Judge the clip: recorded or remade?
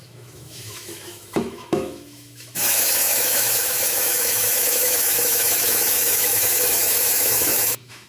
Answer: remade